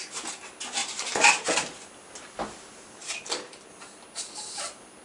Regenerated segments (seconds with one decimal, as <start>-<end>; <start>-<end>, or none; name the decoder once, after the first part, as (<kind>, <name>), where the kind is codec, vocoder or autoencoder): 0.8-1.5 (vocoder, BigVGAN v2); 3.0-3.7